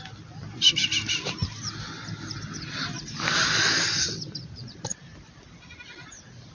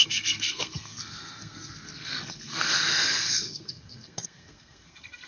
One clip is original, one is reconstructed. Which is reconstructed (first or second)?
second